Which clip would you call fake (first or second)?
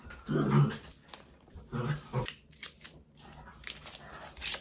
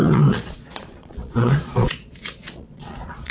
second